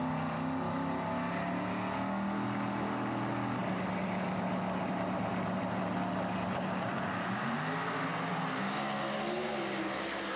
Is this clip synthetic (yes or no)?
no